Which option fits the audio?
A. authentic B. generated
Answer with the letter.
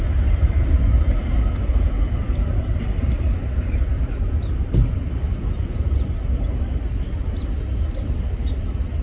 A